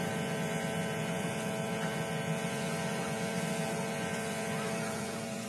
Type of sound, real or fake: fake